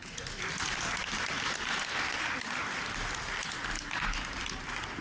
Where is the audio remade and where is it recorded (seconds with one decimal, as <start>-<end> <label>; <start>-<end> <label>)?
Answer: 0.0-5.0 recorded

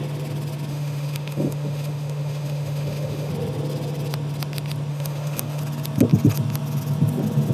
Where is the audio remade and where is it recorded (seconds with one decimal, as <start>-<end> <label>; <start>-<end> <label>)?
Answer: 0.0-0.7 recorded; 0.7-3.3 remade; 3.3-4.9 recorded; 4.9-5.6 remade; 5.6-7.5 recorded

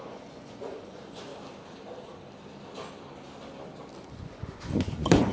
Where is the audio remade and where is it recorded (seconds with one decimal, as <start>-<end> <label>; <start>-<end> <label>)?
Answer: 0.0-1.3 remade; 1.3-4.1 recorded; 4.1-5.3 remade

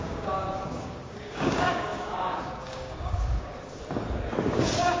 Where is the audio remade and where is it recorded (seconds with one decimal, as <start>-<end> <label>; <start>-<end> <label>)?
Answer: 0.0-3.5 remade; 3.5-4.4 recorded; 4.4-5.0 remade

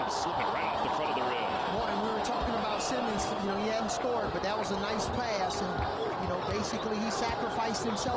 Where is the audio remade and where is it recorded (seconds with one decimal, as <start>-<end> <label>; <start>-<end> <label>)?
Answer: 0.0-8.2 recorded

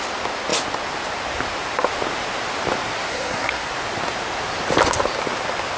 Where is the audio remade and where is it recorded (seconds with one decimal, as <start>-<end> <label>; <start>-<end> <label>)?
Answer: 0.0-3.1 recorded; 3.1-3.7 remade; 3.7-5.8 recorded